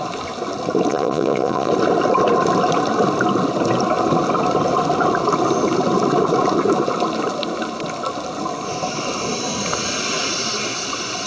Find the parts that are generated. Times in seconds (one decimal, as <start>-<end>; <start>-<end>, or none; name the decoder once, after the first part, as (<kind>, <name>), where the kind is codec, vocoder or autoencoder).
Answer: 0.9-1.7 (vocoder, Vocos)